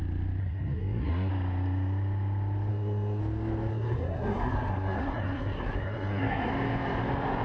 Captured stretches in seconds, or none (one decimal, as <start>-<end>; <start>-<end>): 0.0-0.4; 1.3-2.7; 3.2-3.7; 6.5-7.4